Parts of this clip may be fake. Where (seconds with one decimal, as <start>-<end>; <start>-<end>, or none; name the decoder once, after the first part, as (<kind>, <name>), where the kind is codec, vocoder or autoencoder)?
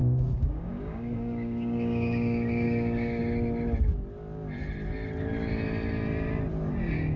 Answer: 0.0-3.2 (codec, DAC)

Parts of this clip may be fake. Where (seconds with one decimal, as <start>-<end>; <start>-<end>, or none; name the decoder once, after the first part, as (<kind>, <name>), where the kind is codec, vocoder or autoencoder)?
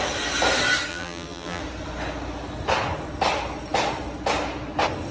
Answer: 0.9-1.6 (vocoder, BigVGAN v2)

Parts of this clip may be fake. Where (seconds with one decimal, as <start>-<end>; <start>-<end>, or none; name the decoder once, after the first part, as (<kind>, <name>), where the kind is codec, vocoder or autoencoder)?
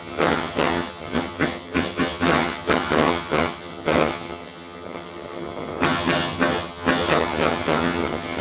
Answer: 0.0-8.4 (vocoder, HiFi-GAN)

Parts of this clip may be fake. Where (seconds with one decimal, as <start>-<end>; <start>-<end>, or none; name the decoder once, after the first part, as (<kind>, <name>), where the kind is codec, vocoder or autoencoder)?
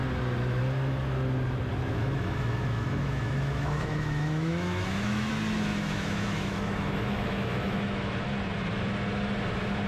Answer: 1.8-5.3 (autoencoder, DAC-VAE); 5.7-8.1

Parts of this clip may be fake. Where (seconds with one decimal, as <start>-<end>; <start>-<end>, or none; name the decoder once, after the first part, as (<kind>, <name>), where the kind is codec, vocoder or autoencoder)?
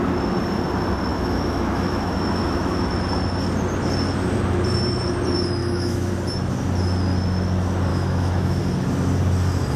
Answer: 1.1-2.9 (autoencoder, DAC-VAE); 5.6-6.1; 7.9-8.6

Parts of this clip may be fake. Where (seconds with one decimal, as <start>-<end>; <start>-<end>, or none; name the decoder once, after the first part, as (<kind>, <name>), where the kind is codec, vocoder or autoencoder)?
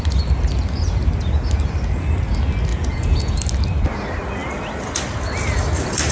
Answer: 2.7-3.4 (vocoder, Vocos)